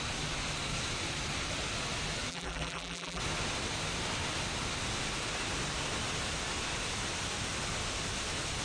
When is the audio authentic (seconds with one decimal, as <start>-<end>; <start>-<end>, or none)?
0.0-2.3; 3.2-8.6